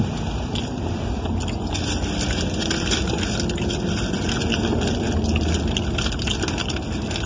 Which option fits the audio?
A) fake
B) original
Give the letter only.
B